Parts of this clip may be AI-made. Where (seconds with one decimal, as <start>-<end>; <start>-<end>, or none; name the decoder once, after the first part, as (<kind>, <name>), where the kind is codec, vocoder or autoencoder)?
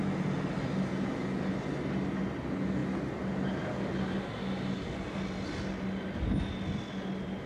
none